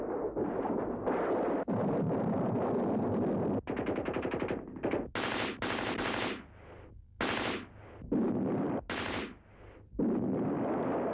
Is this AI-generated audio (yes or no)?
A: no